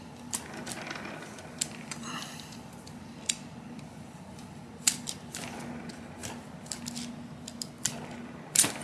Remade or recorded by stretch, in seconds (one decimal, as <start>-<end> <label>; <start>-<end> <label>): 0.0-6.2 remade; 6.2-8.8 recorded